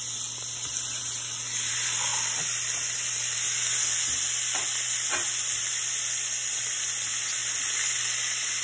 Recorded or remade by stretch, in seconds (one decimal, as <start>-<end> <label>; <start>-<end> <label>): 0.0-8.6 recorded